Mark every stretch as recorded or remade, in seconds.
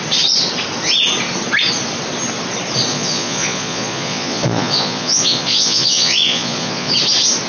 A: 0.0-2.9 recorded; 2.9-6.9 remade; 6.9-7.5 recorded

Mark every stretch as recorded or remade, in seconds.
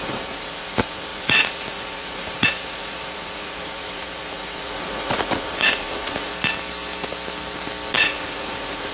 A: 0.0-6.3 remade; 6.3-8.0 recorded; 8.0-8.9 remade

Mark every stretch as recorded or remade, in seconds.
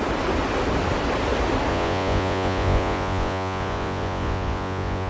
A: 0.0-1.7 recorded; 1.7-5.1 remade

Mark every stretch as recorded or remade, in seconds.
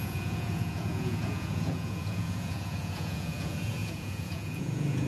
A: 0.0-5.1 remade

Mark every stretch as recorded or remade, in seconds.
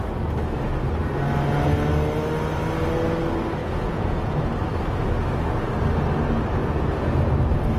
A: 0.0-3.6 recorded; 3.6-4.5 remade; 4.5-7.8 recorded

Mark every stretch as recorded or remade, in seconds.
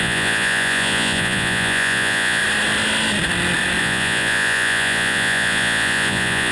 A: 0.0-2.4 remade; 2.4-3.8 recorded; 3.8-6.5 remade